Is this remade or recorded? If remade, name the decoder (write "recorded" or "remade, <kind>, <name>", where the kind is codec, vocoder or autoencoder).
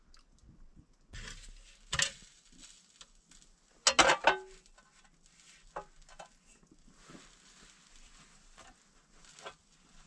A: recorded